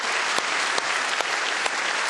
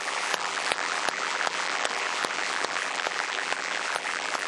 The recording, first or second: first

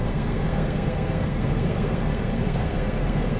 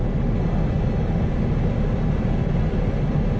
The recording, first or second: second